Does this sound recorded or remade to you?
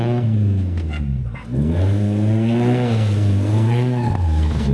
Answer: remade